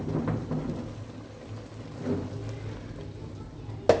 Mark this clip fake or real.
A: real